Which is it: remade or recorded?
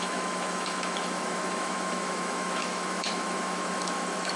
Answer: remade